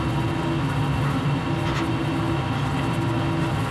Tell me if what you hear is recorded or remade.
recorded